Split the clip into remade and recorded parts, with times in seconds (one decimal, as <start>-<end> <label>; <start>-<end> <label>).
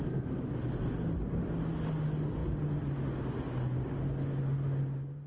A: 0.0-5.3 recorded